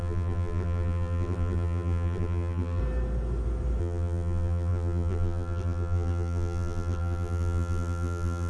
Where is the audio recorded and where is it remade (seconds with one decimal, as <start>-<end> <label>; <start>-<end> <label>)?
0.0-2.8 remade; 2.8-3.8 recorded; 3.8-8.5 remade